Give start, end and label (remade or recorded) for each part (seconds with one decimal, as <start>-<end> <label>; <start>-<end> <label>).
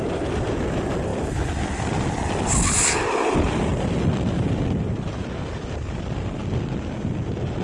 0.0-7.6 recorded